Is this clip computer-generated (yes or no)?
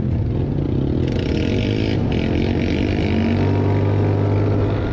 no